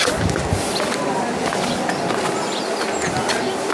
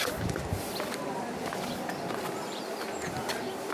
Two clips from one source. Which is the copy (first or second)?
second